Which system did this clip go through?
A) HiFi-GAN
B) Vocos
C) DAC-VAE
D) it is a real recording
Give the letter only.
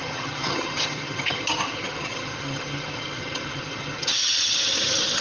A